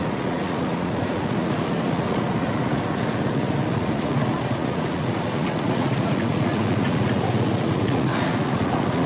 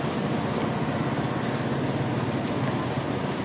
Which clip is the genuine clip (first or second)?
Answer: second